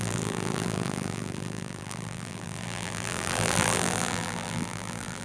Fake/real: fake